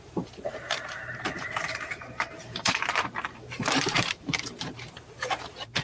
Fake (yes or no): yes